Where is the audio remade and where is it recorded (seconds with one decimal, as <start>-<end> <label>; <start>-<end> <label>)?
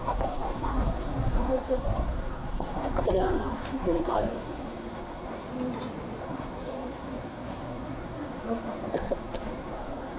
0.0-5.5 remade; 5.5-6.2 recorded; 6.2-10.2 remade